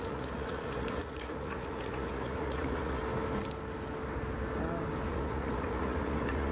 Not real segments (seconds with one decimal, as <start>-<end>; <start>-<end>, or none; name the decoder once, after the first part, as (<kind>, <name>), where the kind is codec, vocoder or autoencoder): 0.0-3.0 (vocoder, Vocos); 5.1-6.5